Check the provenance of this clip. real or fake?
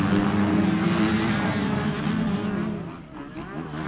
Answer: real